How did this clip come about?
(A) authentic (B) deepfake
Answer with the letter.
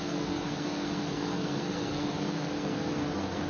B